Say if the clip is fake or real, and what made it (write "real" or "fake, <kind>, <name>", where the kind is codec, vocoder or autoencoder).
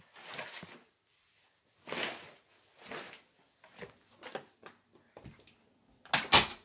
real